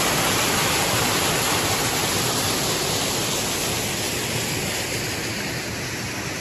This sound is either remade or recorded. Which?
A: recorded